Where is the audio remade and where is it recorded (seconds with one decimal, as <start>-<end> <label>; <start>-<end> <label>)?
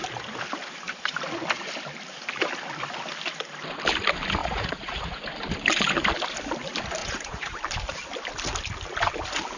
0.0-4.4 recorded; 4.4-5.3 remade; 5.3-7.0 recorded; 7.0-7.6 remade; 7.6-9.6 recorded